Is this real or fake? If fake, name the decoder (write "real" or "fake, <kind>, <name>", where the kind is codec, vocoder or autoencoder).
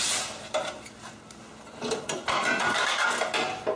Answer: real